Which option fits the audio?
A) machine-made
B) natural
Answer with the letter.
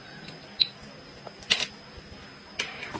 B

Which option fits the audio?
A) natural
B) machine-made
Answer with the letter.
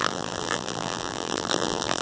B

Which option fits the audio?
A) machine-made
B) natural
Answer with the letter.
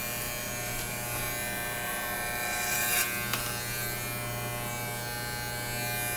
B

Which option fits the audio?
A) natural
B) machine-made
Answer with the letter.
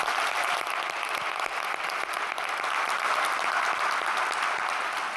A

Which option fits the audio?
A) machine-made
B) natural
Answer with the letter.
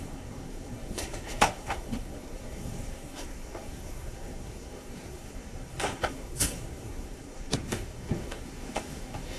A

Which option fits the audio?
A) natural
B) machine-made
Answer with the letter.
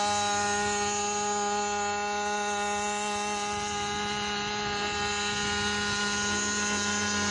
A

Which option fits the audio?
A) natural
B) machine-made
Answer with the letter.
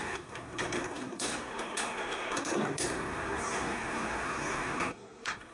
B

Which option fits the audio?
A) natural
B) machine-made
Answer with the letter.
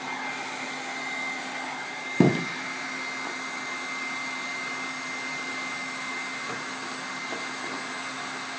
A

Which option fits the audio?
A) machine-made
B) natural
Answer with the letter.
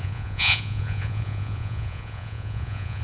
A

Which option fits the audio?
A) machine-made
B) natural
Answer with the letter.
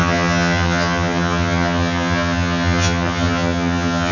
A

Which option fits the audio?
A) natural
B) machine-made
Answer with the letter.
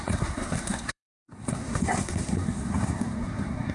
B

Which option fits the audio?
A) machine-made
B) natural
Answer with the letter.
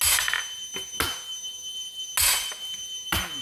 B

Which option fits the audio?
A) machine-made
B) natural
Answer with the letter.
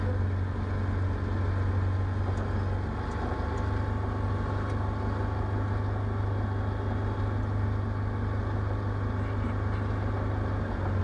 B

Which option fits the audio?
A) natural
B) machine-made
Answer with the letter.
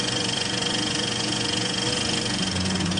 B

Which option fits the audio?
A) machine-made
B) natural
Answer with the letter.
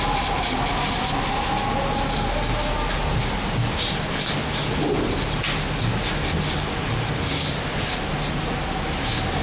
B